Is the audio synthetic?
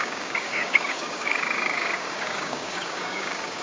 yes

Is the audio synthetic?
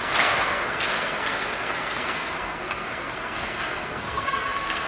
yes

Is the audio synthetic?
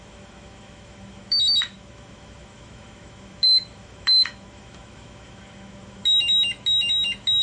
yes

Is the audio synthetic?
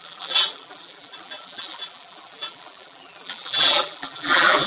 yes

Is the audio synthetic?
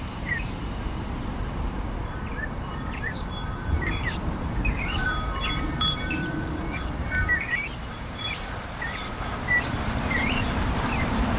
yes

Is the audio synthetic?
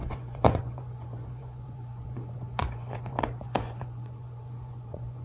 yes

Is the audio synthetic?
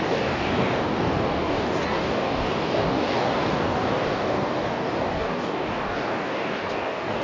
yes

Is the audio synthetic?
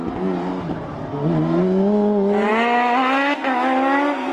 no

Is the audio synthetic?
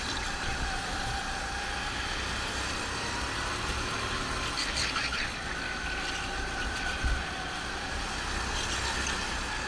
no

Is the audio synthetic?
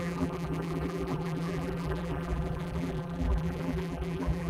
yes